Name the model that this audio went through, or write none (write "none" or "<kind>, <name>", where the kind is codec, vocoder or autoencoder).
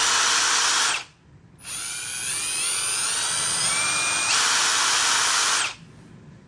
none